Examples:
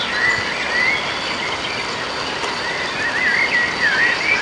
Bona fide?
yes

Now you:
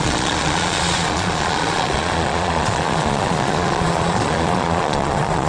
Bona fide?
no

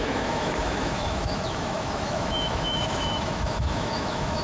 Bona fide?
no